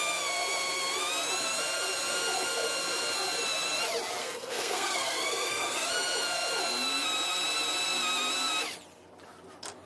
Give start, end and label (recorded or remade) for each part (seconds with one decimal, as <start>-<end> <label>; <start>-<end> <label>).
0.0-4.2 recorded; 4.2-5.9 remade; 5.9-9.9 recorded